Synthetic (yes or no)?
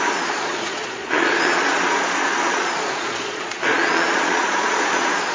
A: yes